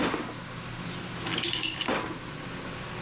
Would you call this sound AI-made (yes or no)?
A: no